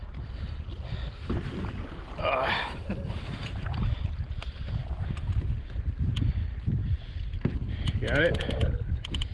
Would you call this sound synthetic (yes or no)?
no